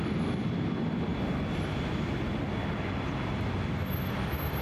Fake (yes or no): no